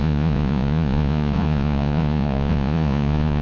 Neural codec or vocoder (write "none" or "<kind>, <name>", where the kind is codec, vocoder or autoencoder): vocoder, Vocos